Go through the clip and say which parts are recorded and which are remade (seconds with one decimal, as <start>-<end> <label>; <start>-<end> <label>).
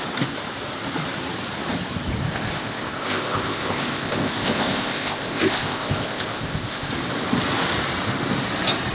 0.0-2.2 recorded; 2.2-6.9 remade; 6.9-8.9 recorded